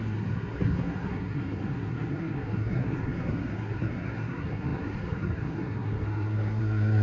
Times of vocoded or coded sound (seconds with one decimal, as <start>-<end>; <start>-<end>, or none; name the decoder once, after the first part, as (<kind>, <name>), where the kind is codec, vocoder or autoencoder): 0.0-7.0 (codec, SNAC)